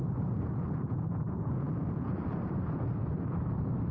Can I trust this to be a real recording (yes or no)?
no